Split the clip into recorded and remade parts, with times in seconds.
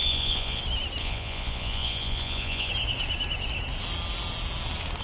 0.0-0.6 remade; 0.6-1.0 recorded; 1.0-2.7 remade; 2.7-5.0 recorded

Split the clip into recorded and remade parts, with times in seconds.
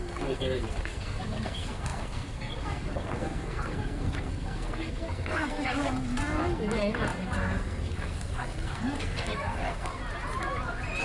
0.0-10.0 remade; 10.0-11.0 recorded